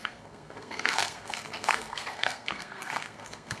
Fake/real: fake